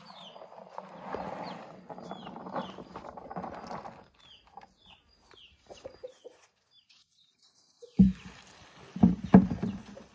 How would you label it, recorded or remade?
recorded